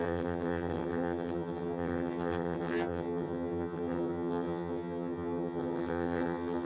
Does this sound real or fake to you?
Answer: fake